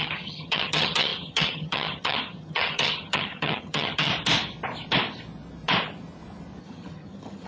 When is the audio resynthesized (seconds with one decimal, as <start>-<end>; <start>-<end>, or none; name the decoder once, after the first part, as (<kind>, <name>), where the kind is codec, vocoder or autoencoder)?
0.0-4.1 (vocoder, HiFi-GAN); 6.6-7.5